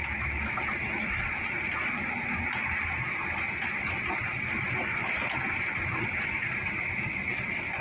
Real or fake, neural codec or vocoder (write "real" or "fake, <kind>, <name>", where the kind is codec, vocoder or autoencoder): real